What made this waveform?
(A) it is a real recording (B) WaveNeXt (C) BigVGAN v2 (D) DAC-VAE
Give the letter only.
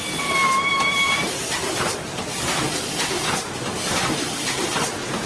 A